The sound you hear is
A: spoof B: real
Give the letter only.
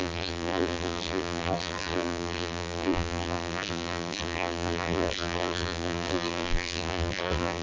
A